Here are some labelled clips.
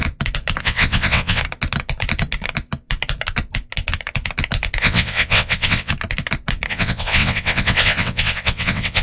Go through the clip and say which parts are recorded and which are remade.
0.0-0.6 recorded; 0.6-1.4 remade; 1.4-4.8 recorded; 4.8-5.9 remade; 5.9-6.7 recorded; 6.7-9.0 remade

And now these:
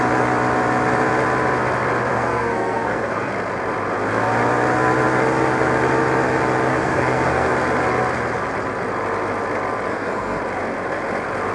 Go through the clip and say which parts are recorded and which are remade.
0.0-2.1 recorded; 2.1-3.3 remade; 3.3-6.7 recorded; 6.7-7.5 remade; 7.5-9.9 recorded; 9.9-10.4 remade; 10.4-11.5 recorded

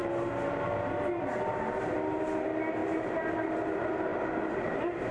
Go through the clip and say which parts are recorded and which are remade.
0.0-2.8 recorded; 2.8-3.5 remade; 3.5-5.1 recorded